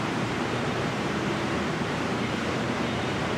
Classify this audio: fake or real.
fake